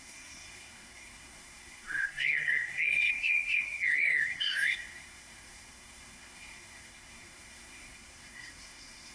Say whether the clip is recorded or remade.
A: remade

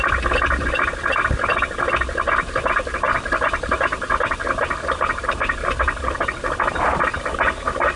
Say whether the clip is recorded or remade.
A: recorded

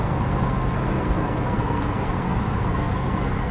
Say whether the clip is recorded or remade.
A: remade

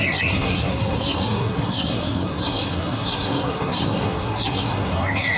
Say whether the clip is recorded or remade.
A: remade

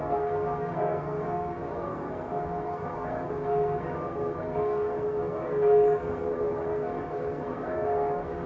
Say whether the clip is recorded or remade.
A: remade